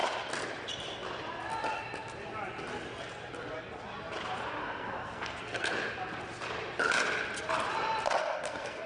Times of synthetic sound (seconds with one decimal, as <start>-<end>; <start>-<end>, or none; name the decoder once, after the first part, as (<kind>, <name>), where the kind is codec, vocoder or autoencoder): 4.6-5.7 (codec, SNAC); 8.2-8.9